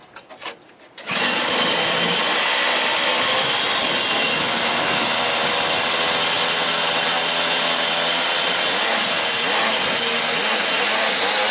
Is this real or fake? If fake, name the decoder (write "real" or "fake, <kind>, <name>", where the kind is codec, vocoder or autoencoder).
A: real